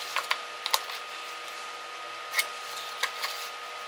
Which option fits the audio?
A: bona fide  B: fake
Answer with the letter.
A